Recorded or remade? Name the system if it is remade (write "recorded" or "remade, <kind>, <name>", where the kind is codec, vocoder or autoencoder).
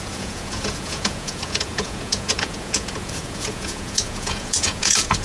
remade, vocoder, Vocos